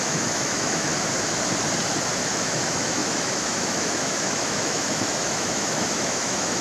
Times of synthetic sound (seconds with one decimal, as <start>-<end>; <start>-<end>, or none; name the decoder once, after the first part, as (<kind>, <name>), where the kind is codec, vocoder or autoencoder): 0.0-0.9 (autoencoder, DAC-VAE); 2.3-6.6